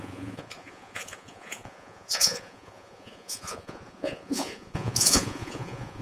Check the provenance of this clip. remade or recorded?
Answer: remade